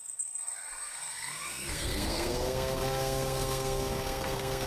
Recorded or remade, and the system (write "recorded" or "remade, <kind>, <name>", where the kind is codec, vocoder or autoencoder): remade, codec, SNAC